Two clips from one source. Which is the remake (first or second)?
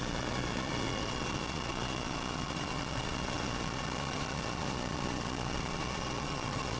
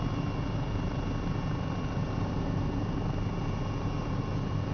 first